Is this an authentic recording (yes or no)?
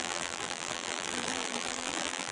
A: no